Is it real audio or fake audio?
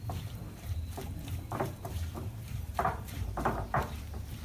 fake